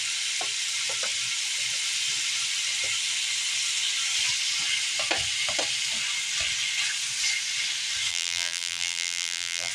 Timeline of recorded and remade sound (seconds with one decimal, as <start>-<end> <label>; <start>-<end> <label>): 0.0-8.1 recorded; 8.1-9.7 remade